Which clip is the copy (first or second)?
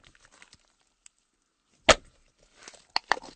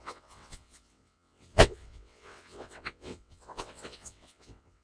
second